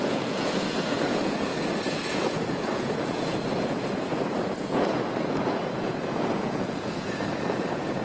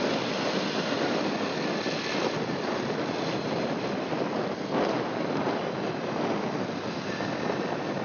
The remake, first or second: first